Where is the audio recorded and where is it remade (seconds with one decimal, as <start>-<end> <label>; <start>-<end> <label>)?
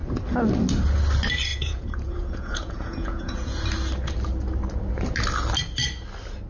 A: 0.0-1.5 recorded; 1.5-3.6 remade; 3.6-6.5 recorded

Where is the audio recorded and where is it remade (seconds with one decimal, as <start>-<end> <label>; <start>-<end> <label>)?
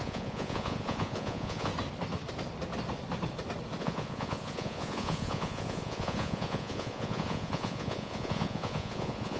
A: 0.0-1.7 remade; 1.7-3.8 recorded; 3.8-9.4 remade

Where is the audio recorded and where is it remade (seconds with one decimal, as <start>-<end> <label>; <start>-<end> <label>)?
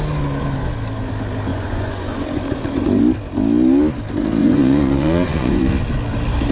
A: 0.0-1.5 recorded; 1.5-3.0 remade; 3.0-4.4 recorded; 4.4-5.6 remade; 5.6-6.5 recorded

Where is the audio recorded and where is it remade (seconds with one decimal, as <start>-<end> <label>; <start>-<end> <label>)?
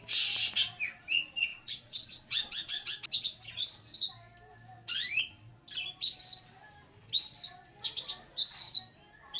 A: 0.0-1.5 recorded; 1.5-3.0 remade; 3.0-9.4 recorded